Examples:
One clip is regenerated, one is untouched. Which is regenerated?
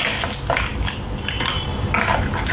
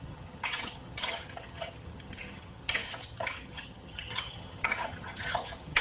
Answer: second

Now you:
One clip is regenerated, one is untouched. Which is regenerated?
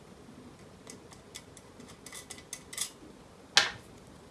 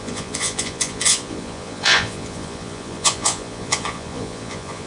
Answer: second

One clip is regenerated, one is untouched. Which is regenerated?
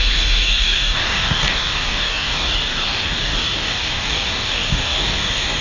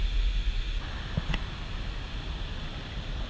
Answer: first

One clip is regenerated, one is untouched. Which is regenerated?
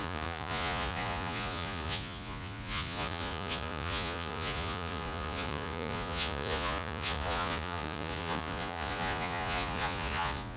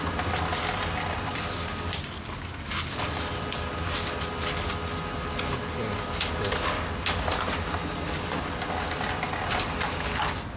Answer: first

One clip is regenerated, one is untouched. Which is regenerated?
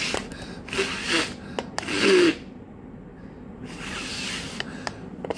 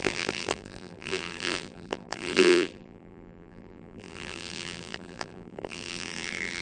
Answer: second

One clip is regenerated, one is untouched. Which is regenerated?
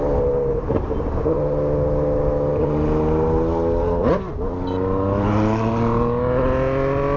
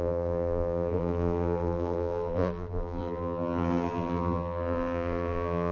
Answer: second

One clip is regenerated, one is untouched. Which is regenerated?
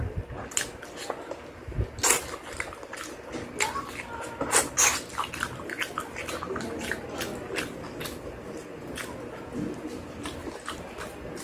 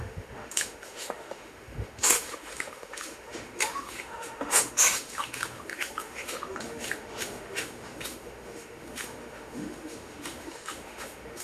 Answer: second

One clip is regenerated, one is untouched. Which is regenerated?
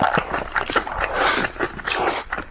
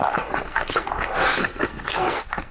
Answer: second